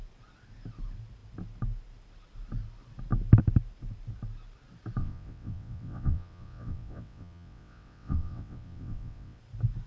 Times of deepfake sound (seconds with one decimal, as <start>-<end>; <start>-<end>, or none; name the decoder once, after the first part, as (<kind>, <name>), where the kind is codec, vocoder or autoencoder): 5.0-9.4 (vocoder, WaveNeXt)